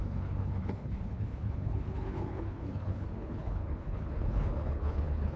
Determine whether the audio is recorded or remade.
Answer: remade